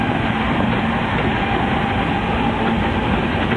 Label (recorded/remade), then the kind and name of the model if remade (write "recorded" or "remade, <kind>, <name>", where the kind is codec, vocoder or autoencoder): recorded